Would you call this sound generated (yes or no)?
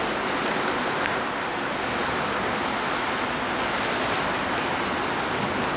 no